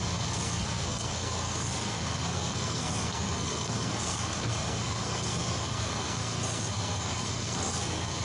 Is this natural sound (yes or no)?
no